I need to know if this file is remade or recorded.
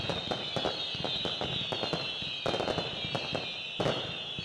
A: recorded